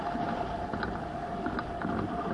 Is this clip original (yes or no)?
yes